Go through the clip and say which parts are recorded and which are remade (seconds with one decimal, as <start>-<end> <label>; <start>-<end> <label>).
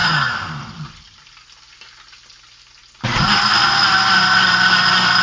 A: 0.0-5.2 recorded